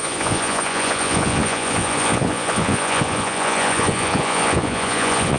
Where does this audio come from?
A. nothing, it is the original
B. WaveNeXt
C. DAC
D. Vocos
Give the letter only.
D